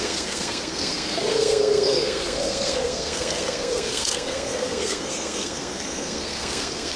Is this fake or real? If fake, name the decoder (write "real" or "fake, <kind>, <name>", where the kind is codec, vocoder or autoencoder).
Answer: fake, codec, SNAC